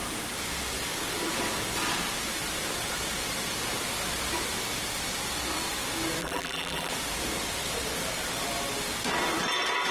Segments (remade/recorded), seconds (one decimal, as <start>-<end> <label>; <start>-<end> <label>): 0.0-6.2 recorded; 6.2-6.9 remade; 6.9-9.9 recorded